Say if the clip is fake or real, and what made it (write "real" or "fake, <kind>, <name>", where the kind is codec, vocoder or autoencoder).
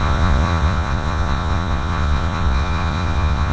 fake, vocoder, Vocos